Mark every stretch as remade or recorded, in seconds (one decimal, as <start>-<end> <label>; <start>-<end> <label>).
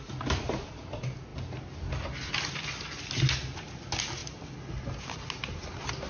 0.0-6.1 recorded